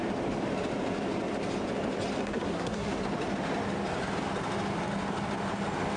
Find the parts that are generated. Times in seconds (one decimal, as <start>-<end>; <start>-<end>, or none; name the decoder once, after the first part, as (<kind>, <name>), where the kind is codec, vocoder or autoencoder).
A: 2.2-2.9 (codec, SNAC)